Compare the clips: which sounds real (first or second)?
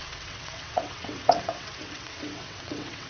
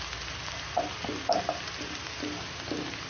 second